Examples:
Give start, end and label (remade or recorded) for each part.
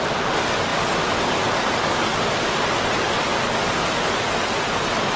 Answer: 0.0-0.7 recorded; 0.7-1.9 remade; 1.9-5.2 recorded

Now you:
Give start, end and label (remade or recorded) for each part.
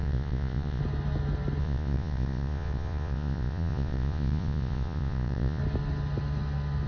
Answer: 0.0-0.8 remade; 0.8-1.6 recorded; 1.6-5.6 remade; 5.6-6.9 recorded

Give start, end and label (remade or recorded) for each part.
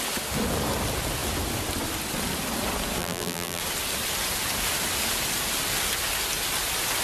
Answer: 0.0-3.0 recorded; 3.0-3.6 remade; 3.6-7.0 recorded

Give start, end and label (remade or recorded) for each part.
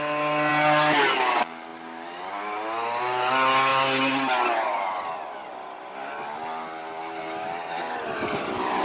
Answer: 0.0-8.8 recorded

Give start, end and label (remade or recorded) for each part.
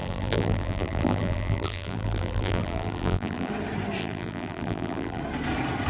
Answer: 0.0-3.5 remade; 3.5-4.0 recorded; 4.0-5.2 remade; 5.2-5.9 recorded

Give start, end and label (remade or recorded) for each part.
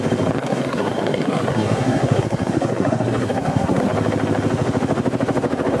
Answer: 0.0-0.4 recorded; 0.4-3.9 remade; 3.9-5.8 recorded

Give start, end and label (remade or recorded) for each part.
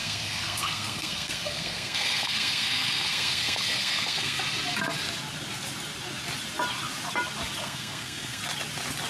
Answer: 0.0-4.4 remade; 4.4-7.6 recorded; 7.6-8.4 remade; 8.4-9.1 recorded